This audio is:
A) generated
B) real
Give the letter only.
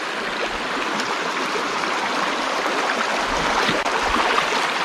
B